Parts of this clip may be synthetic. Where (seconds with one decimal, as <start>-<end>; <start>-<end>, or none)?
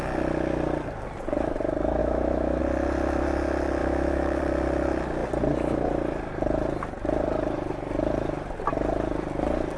2.0-2.6; 3.8-4.4